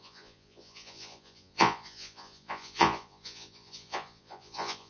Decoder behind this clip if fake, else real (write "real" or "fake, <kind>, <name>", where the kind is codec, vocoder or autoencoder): fake, vocoder, Vocos